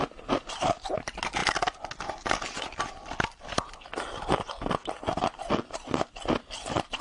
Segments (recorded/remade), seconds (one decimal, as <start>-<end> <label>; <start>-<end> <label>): 0.0-7.0 recorded